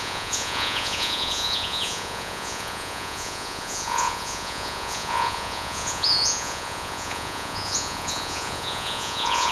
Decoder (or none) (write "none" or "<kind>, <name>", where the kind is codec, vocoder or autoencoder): vocoder, Vocos